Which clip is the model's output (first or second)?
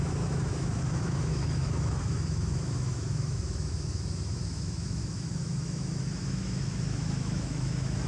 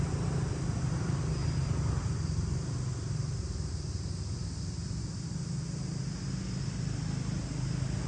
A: first